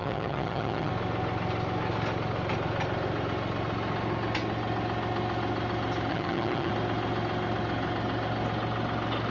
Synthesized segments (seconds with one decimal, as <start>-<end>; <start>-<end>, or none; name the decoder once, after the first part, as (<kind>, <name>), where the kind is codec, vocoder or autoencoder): 0.0-0.9 (vocoder, HiFi-GAN); 6.1-6.7